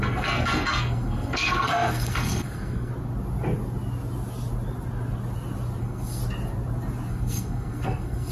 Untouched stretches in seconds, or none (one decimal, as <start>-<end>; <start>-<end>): 2.9-5.8; 6.2-7.1